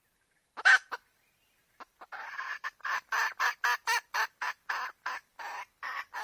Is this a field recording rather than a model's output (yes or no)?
yes